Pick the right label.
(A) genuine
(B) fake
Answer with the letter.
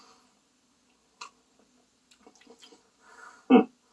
A